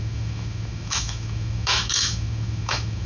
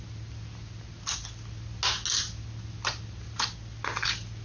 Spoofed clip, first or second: first